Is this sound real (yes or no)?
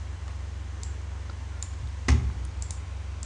yes